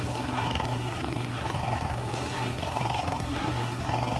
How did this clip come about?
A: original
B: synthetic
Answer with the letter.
B